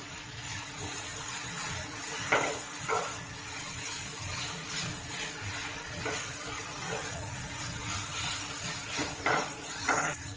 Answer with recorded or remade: remade